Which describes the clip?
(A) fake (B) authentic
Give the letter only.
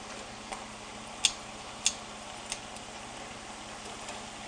B